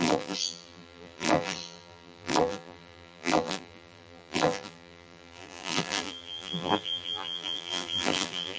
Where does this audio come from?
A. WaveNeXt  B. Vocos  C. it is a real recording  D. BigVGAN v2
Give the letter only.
D